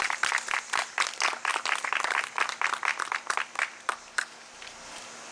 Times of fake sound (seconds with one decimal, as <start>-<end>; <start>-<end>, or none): none